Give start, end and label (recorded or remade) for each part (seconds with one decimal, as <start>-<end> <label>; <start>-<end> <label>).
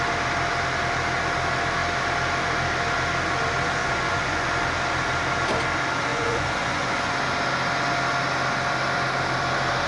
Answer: 0.0-3.8 recorded; 3.8-4.5 remade; 4.5-6.1 recorded; 6.1-7.1 remade; 7.1-9.9 recorded